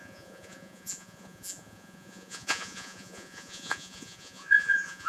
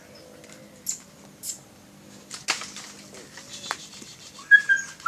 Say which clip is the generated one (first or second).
first